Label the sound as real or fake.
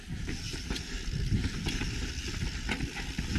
real